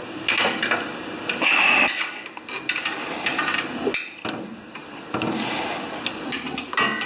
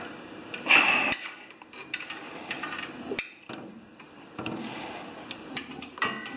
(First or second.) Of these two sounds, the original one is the first